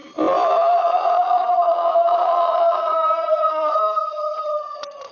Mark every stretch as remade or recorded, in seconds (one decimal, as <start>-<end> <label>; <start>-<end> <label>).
0.0-0.8 recorded; 0.8-5.1 remade